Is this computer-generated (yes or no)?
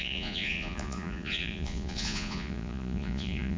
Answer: yes